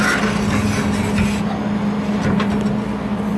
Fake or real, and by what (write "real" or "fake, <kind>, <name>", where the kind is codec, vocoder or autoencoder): real